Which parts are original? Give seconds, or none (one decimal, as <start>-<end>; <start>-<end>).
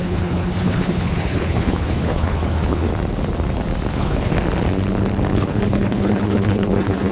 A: 2.9-3.9; 4.3-5.3